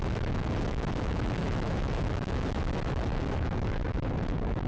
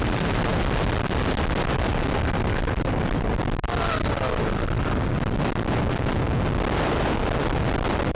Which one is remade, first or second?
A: first